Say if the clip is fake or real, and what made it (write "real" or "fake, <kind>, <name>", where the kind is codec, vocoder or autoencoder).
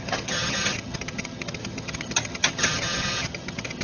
fake, vocoder, HiFi-GAN